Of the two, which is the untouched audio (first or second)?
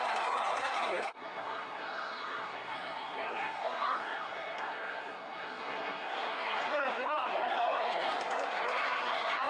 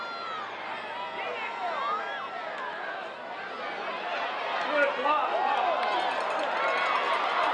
second